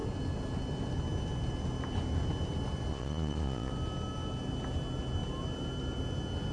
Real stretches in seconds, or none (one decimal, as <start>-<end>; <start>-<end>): 0.0-2.9; 3.7-6.5